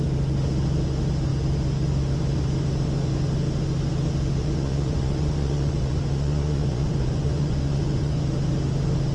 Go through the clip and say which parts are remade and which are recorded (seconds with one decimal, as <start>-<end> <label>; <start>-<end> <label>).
0.0-4.4 recorded; 4.4-8.2 remade; 8.2-9.1 recorded

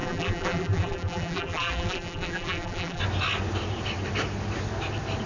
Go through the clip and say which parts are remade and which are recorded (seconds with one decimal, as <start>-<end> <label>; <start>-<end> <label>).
0.0-3.0 remade; 3.0-5.3 recorded

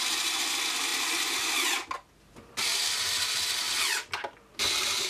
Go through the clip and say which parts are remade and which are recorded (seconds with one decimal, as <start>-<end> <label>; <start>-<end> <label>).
0.0-5.1 recorded

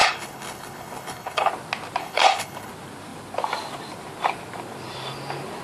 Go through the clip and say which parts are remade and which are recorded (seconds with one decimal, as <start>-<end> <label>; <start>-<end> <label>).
0.0-1.5 remade; 1.5-2.0 recorded; 2.0-2.7 remade; 2.7-5.6 recorded

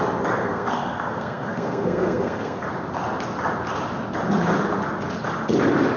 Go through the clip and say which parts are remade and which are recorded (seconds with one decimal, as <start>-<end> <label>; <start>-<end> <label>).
0.0-0.4 recorded; 0.4-2.7 remade; 2.7-6.0 recorded

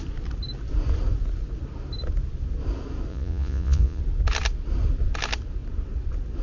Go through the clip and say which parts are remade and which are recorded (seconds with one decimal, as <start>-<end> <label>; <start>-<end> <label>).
0.0-3.1 recorded; 3.1-4.0 remade; 4.0-6.4 recorded